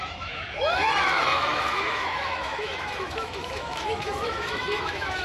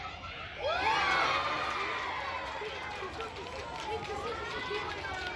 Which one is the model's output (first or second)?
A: first